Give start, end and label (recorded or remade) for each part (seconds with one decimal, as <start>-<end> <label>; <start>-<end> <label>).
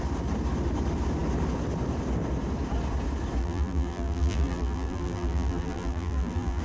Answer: 0.0-3.4 recorded; 3.4-6.6 remade